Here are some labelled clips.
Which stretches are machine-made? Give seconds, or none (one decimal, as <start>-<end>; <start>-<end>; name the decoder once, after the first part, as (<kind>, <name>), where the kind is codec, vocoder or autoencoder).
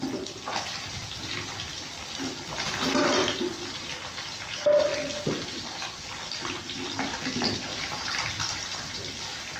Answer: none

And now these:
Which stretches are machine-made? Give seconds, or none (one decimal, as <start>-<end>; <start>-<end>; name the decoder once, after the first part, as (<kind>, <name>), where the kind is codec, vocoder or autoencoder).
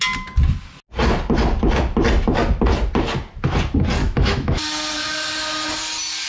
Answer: 4.0-4.6 (autoencoder, DAC-VAE)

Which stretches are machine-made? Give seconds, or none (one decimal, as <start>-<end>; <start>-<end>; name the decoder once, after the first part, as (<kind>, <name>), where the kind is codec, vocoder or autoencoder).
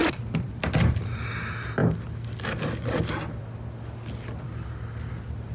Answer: 0.0-0.9 (vocoder, BigVGAN v2)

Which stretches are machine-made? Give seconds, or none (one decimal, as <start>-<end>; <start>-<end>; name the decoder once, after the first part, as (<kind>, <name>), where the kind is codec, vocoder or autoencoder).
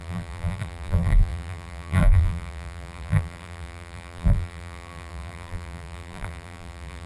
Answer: 0.0-7.1 (vocoder, BigVGAN v2)